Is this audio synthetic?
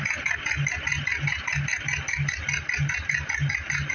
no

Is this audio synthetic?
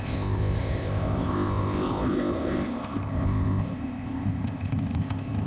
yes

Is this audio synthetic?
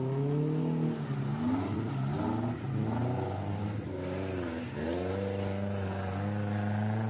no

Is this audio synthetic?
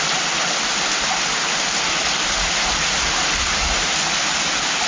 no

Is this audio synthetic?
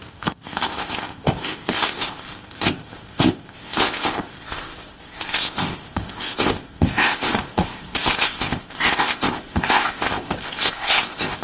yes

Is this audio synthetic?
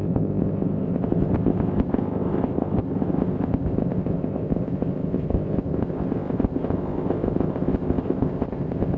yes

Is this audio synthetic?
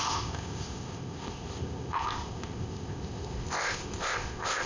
yes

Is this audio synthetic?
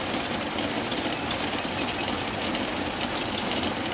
no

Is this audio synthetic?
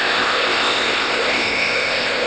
yes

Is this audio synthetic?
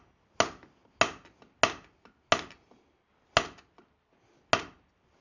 no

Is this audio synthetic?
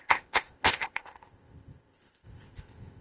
yes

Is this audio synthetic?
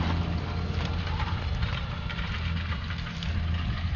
no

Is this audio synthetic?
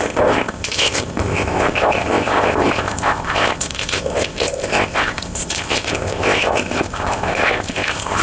yes